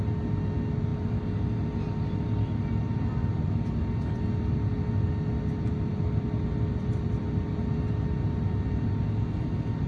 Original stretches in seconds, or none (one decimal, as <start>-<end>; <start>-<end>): 0.0-9.9